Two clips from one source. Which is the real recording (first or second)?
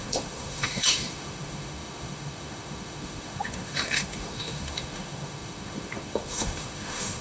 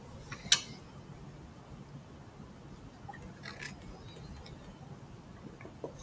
second